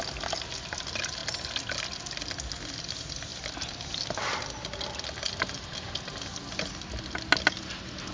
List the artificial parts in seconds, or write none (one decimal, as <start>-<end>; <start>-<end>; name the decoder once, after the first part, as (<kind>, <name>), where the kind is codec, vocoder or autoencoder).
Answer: none